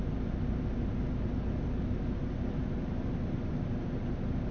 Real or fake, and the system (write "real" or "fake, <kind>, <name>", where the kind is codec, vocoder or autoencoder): real